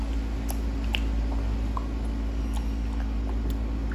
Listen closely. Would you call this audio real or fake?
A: real